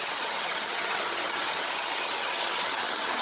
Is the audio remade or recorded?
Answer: remade